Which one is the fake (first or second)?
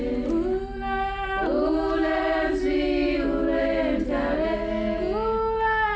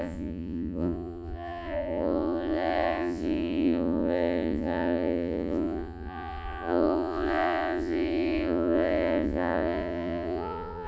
second